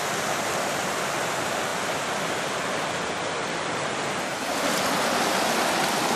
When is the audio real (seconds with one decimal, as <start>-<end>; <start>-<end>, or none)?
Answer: 0.0-6.2